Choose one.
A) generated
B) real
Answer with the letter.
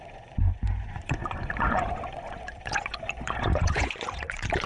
A